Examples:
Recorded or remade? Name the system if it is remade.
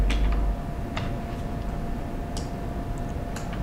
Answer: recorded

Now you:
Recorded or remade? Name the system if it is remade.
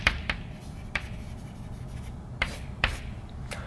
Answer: remade, vocoder, BigVGAN v2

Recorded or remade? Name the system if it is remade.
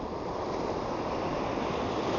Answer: recorded